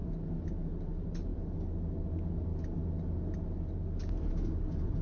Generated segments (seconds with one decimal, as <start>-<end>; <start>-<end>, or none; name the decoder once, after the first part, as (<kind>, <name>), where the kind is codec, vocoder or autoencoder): none